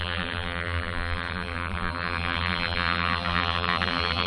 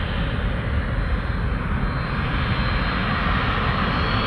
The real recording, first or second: second